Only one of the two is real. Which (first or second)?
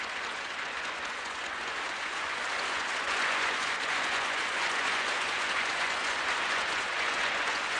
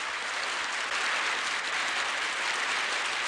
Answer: second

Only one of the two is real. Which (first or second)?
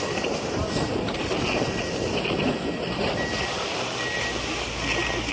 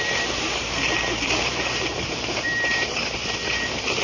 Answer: first